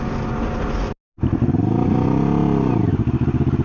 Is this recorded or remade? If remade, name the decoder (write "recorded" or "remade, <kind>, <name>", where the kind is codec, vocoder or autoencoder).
recorded